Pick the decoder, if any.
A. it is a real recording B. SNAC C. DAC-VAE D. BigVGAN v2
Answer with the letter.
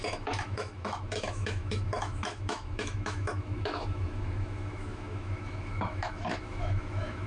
C